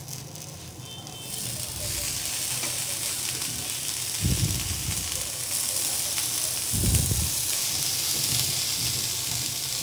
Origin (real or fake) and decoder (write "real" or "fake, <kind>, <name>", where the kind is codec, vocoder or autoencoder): real